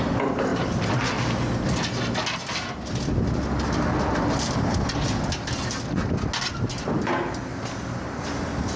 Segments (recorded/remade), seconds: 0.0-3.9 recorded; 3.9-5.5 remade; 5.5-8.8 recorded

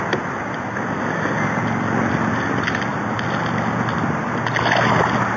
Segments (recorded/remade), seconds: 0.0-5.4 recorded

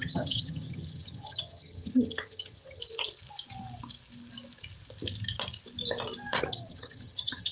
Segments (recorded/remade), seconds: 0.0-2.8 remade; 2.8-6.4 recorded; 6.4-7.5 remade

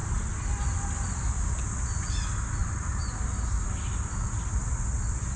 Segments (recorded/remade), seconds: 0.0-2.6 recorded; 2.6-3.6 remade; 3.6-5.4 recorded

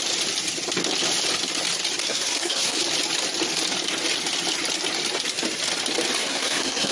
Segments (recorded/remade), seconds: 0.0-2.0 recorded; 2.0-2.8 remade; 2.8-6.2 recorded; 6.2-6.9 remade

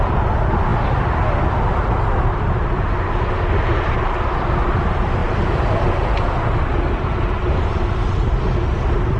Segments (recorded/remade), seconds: 0.0-9.2 recorded